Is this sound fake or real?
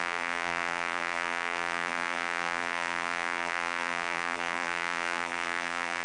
fake